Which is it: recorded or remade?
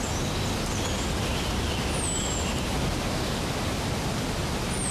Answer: recorded